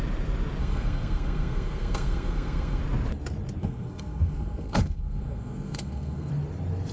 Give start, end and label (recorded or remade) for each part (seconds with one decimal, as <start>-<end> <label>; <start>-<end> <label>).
0.0-0.6 recorded; 0.6-2.8 remade; 2.8-3.6 recorded; 3.6-6.3 remade; 6.3-6.9 recorded